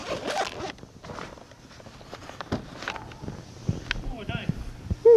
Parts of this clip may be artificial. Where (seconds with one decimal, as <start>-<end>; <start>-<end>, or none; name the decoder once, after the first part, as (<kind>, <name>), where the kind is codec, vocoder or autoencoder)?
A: none